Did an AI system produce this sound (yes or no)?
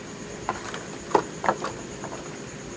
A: no